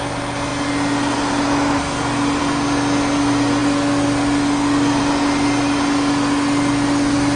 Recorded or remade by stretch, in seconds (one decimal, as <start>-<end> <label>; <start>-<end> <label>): 0.0-7.4 recorded